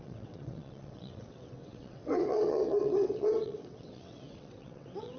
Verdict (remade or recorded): remade